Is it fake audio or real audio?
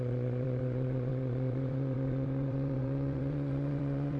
fake